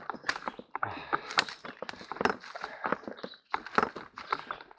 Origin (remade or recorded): recorded